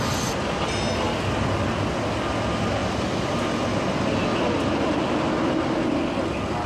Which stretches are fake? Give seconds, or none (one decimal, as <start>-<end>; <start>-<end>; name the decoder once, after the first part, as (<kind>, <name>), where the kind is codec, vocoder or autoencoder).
none